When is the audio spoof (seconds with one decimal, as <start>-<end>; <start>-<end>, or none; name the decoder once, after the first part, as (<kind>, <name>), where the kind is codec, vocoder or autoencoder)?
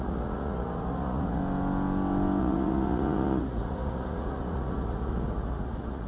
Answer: 0.0-1.4 (vocoder, Vocos); 2.4-6.1